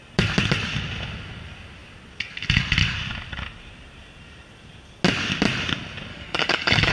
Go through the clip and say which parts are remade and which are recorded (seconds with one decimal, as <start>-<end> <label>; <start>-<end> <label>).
0.0-6.1 recorded; 6.1-6.9 remade